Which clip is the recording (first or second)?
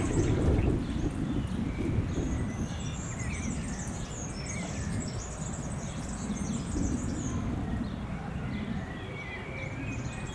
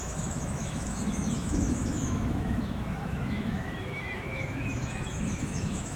first